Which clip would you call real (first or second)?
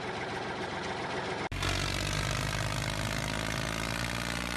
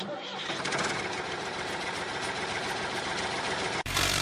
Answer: first